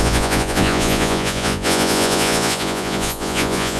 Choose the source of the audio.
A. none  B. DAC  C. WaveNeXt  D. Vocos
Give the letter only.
D